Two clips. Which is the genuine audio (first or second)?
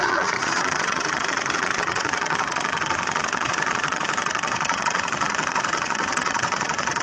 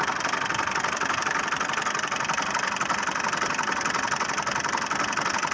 second